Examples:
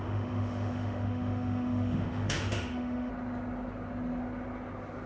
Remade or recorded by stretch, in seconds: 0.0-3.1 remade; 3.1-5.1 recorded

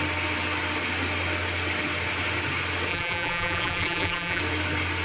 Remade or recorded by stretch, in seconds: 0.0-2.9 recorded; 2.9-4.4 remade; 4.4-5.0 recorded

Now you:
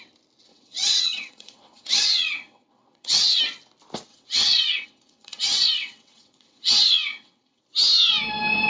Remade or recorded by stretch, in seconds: 0.0-0.5 recorded; 0.5-3.4 remade; 3.4-4.1 recorded; 4.1-7.6 remade; 7.6-8.7 recorded